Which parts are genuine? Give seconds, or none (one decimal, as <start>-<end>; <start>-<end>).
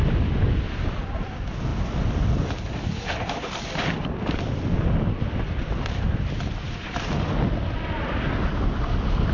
0.0-9.3